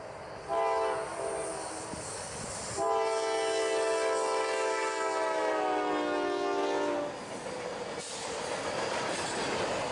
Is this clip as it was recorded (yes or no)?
yes